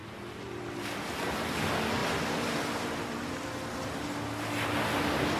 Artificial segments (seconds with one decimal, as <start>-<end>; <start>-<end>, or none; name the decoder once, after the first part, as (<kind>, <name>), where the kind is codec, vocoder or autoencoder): 0.0-1.2 (vocoder, BigVGAN v2)

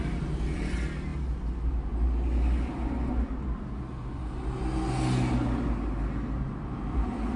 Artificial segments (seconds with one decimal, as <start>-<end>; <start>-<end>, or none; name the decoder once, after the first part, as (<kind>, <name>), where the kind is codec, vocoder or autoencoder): none

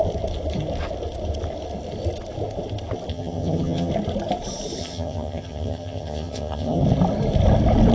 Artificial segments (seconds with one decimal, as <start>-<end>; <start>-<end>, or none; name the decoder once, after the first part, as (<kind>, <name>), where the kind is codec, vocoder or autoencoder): 3.1-3.9 (vocoder, HiFi-GAN); 4.8-6.8

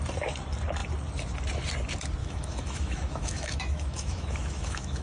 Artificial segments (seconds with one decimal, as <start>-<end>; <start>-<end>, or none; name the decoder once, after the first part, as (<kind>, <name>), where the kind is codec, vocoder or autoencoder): 2.2-5.0 (autoencoder, DAC-VAE)